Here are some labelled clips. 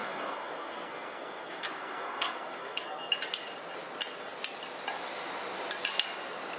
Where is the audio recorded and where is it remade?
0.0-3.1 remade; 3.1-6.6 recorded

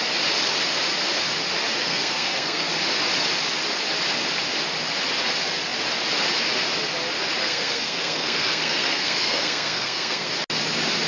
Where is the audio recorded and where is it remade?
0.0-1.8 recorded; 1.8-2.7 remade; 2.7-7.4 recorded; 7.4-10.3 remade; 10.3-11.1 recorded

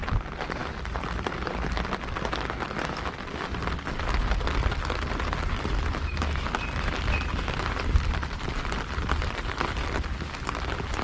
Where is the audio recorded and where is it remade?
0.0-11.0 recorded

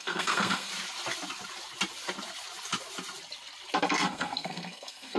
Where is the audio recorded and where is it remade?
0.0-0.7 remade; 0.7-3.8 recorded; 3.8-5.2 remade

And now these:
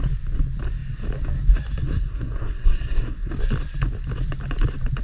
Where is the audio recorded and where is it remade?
0.0-1.9 recorded; 1.9-3.3 remade; 3.3-5.0 recorded

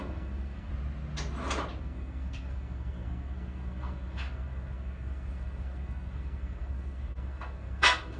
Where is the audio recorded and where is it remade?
0.0-0.7 remade; 0.7-1.8 recorded; 1.8-8.2 remade

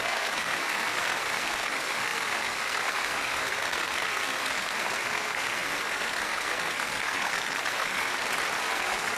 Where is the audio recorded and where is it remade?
0.0-8.1 remade; 8.1-8.6 recorded; 8.6-9.2 remade

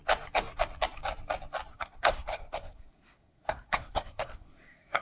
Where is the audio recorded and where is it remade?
0.0-1.7 recorded; 1.7-5.0 remade